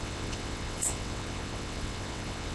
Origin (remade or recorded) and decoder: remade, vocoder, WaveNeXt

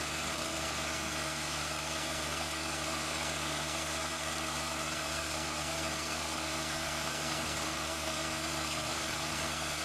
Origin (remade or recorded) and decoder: remade, codec, SNAC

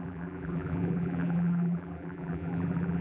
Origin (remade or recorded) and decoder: remade, vocoder, BigVGAN v2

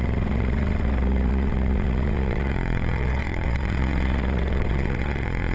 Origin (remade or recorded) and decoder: remade, vocoder, WaveNeXt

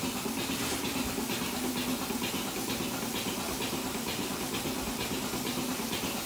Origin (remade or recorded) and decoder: recorded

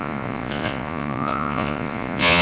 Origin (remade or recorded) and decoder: remade, vocoder, Vocos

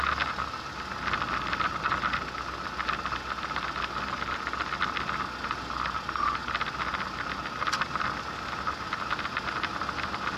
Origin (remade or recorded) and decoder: recorded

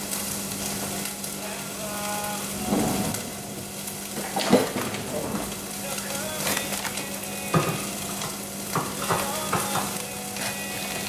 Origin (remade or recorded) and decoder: recorded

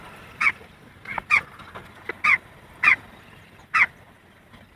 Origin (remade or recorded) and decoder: recorded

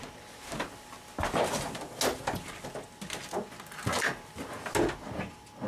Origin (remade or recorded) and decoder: recorded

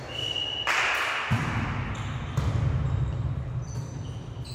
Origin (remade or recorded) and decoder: recorded